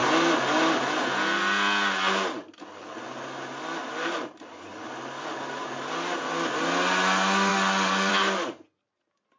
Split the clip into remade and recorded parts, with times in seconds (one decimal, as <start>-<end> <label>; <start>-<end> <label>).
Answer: 0.0-7.5 recorded; 7.5-8.1 remade; 8.1-9.4 recorded